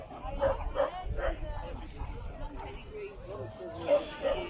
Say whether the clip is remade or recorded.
recorded